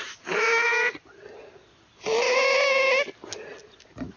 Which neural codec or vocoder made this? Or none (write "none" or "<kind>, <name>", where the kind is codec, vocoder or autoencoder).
none